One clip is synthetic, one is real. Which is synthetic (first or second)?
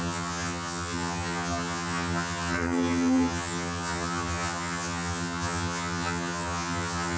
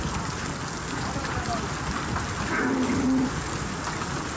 first